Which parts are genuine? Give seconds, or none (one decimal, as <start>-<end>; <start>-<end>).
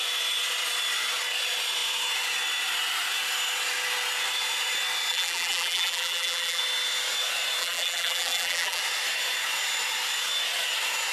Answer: 0.0-5.1; 6.6-7.6; 8.8-11.1